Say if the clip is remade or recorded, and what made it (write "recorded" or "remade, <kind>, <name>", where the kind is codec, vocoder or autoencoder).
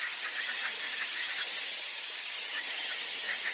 remade, vocoder, HiFi-GAN